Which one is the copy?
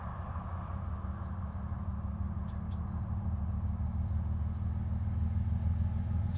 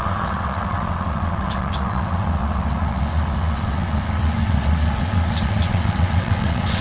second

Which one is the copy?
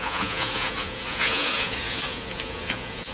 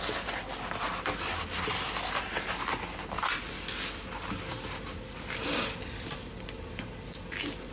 first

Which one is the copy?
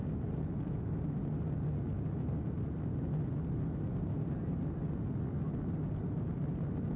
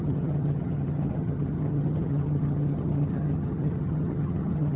second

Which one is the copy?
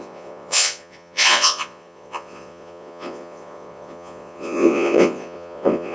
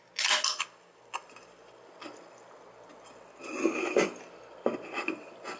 first